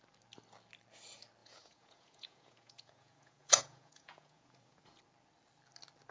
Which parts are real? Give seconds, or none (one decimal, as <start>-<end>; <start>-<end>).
0.0-1.4; 5.0-6.1